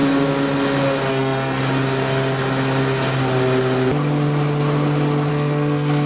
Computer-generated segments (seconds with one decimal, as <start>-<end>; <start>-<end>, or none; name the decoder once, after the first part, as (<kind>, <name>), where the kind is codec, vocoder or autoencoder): 1.1-1.6 (codec, SNAC); 5.3-6.1